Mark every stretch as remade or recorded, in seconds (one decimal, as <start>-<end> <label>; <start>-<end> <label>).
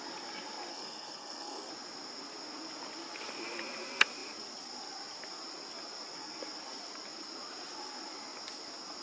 0.0-0.7 recorded; 0.7-1.7 remade; 1.7-9.0 recorded